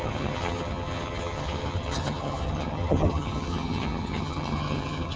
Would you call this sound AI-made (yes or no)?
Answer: yes